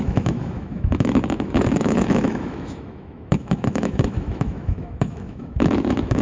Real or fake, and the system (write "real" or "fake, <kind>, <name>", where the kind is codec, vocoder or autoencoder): fake, autoencoder, DAC-VAE